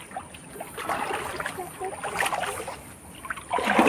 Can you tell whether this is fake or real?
real